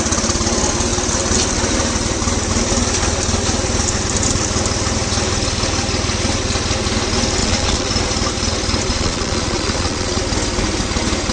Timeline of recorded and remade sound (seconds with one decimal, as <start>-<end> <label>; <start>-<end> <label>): 0.0-7.4 recorded; 7.4-7.9 remade; 7.9-8.9 recorded; 8.9-10.2 remade; 10.2-11.3 recorded